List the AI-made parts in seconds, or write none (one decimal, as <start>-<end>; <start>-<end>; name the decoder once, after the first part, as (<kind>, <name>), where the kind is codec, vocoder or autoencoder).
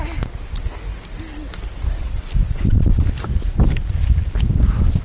none